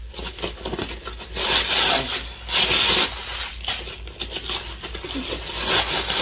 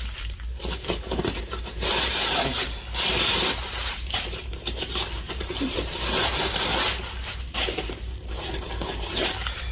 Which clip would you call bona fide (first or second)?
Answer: first